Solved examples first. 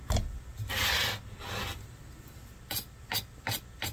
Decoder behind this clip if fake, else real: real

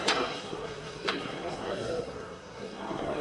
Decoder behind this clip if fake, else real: fake, codec, SNAC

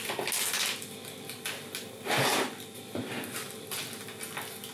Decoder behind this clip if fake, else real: real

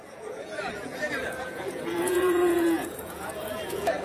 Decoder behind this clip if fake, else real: fake, vocoder, Vocos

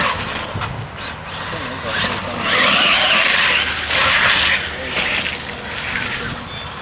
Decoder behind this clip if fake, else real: real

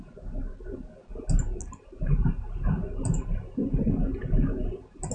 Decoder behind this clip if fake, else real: real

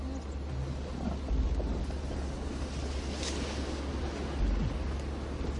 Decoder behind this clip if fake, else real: real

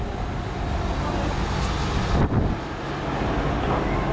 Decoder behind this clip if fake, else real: real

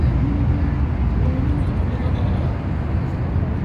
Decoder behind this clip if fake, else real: real